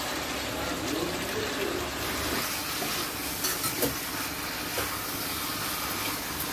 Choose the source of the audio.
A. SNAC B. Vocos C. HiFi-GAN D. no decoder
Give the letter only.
D